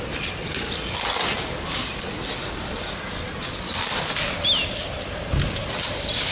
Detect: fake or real real